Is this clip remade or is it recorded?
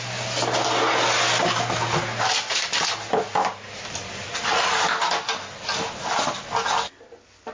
recorded